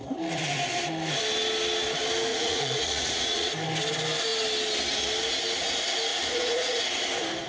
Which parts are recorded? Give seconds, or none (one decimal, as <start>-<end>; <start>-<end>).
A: 0.0-2.3; 3.5-6.1; 6.8-7.5